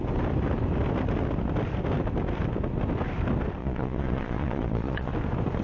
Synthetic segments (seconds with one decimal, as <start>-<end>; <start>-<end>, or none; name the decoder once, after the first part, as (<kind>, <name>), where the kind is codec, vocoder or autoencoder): 3.6-5.1 (vocoder, Vocos)